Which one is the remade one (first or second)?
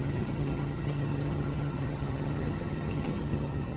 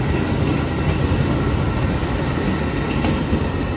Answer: first